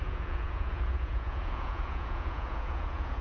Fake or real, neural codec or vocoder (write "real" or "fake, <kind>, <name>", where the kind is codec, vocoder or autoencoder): fake, vocoder, Vocos